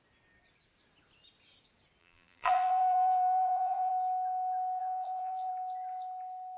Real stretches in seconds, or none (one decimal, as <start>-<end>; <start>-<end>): 0.0-2.0; 3.9-4.8; 5.5-6.6

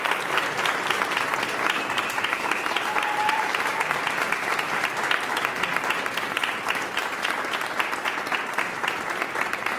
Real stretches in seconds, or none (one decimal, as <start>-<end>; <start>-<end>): 0.0-2.3; 5.3-7.0; 7.7-9.8

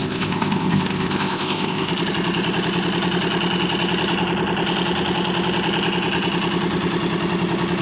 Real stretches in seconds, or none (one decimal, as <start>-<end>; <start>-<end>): 1.9-7.8